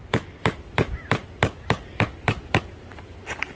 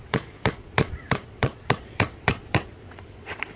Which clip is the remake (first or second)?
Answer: second